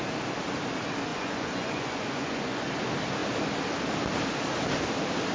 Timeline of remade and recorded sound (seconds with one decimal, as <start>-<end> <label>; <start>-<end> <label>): 0.0-1.1 recorded; 1.1-2.6 remade; 2.6-5.3 recorded